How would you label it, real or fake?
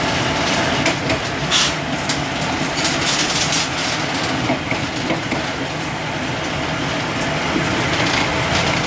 real